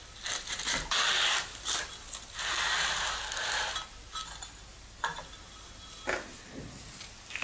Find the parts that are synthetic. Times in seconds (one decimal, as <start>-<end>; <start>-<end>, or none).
none